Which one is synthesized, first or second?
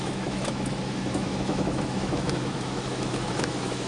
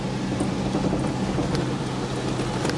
first